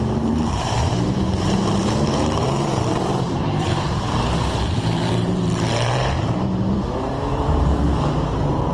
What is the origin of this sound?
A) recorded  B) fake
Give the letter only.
B